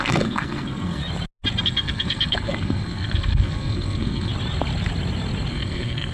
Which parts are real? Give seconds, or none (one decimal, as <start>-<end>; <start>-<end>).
1.0-1.6; 4.3-5.5